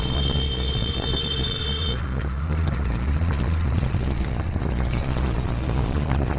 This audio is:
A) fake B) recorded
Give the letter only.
A